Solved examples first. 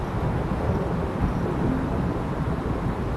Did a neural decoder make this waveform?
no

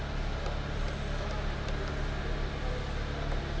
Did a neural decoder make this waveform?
no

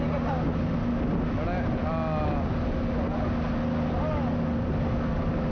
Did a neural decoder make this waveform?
no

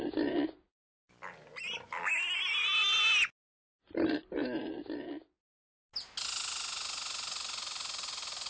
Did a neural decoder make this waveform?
no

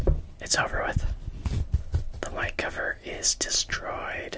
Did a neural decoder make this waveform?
no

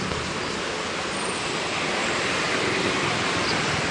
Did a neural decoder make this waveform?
no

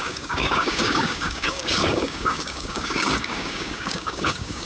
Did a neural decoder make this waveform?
yes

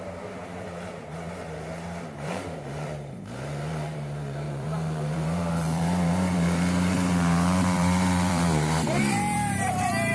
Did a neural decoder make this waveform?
yes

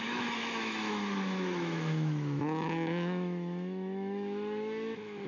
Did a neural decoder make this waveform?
yes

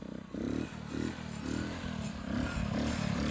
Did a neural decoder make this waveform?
no